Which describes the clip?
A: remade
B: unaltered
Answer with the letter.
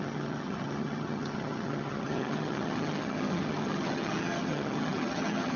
A